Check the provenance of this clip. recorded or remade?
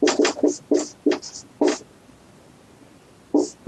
recorded